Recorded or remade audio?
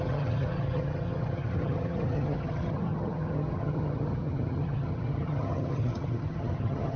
remade